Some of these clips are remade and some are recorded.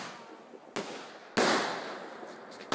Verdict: recorded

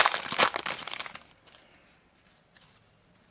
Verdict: recorded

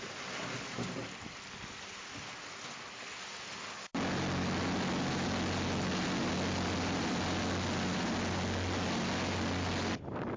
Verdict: recorded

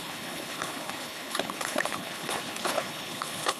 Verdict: remade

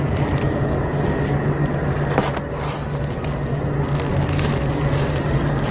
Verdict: recorded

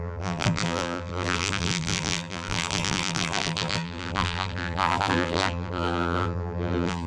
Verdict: remade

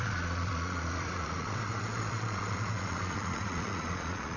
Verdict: remade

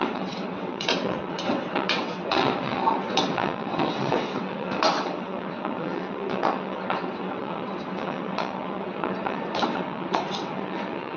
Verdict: remade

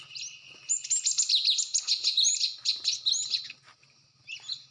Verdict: recorded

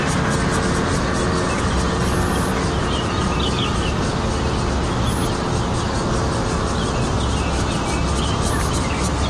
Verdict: recorded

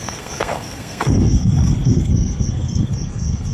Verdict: remade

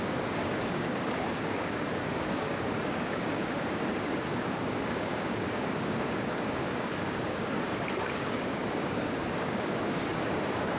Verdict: remade